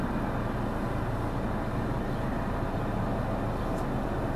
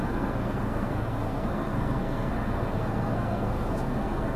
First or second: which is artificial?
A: second